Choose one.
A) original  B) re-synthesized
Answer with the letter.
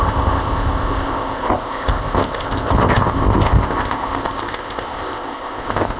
B